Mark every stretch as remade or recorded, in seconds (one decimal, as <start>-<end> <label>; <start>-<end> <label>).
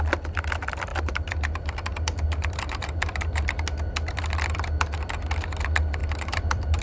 0.0-0.9 recorded; 0.9-3.5 remade; 3.5-6.0 recorded; 6.0-6.8 remade